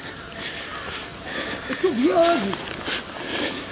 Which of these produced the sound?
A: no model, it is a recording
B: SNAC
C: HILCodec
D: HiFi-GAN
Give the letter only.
A